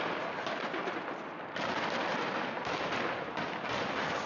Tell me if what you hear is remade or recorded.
recorded